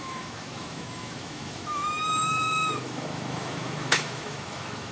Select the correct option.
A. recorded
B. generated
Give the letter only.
B